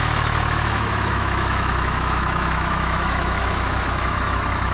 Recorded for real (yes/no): no